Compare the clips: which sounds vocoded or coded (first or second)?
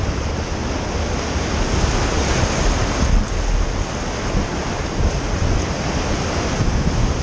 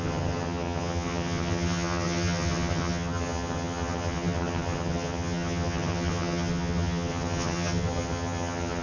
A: second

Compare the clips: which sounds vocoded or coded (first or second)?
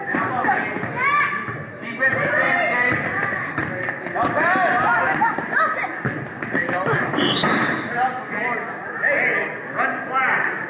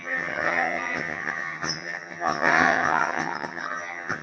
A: second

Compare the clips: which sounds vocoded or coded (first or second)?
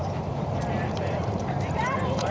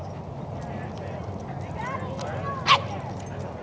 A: first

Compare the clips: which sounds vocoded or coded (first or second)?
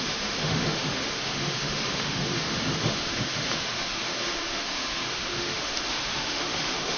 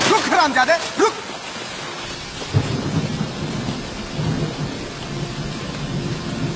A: first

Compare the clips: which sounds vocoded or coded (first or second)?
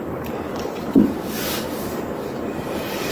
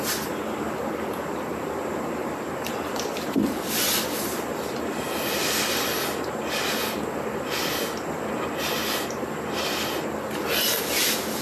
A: first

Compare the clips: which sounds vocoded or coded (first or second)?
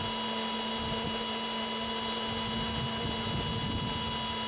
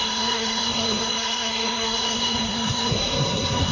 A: second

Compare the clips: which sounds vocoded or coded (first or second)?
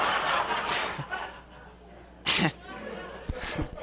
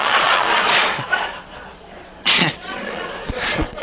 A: second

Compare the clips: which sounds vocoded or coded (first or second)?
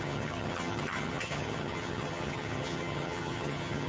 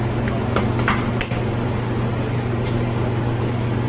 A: first